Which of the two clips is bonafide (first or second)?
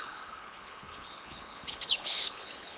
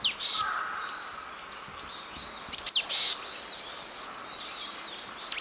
second